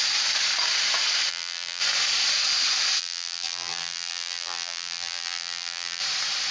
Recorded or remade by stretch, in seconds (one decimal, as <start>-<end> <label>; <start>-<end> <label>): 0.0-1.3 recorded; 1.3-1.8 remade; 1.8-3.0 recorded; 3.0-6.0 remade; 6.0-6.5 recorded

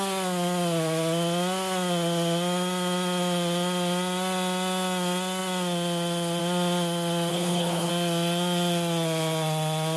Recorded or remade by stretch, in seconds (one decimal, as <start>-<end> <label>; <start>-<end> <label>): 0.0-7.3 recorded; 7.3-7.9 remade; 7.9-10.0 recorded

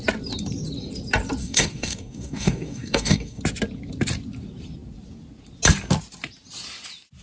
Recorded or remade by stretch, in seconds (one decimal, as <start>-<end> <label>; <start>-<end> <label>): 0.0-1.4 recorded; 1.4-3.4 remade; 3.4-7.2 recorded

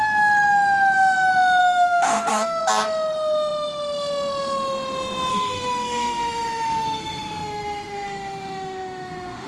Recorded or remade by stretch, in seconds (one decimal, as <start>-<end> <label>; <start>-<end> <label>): 0.0-1.6 recorded; 1.6-2.6 remade; 2.6-5.3 recorded; 5.3-9.5 remade

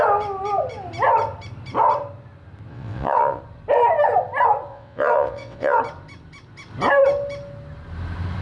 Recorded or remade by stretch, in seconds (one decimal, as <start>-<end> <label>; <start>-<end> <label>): 0.0-2.7 recorded; 2.7-3.4 remade; 3.4-4.7 recorded; 4.7-5.8 remade; 5.8-8.4 recorded

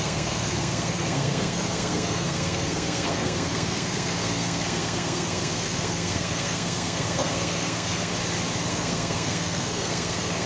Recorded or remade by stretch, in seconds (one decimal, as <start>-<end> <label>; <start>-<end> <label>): 0.0-8.1 remade; 8.1-8.7 recorded; 8.7-10.5 remade

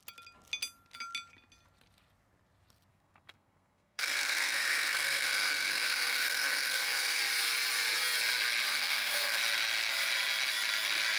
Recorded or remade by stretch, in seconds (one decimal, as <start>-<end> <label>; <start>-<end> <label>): 0.0-2.9 recorded; 2.9-7.2 remade; 7.2-8.7 recorded; 8.7-9.4 remade; 9.4-11.2 recorded

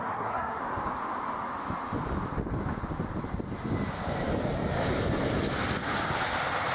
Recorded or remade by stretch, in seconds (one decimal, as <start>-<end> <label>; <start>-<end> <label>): 0.0-0.6 remade; 0.6-6.7 recorded